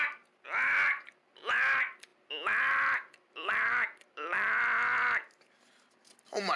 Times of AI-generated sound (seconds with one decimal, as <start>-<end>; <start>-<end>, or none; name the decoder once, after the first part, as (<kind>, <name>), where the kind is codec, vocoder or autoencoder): none